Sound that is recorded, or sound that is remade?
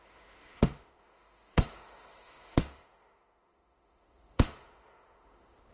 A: remade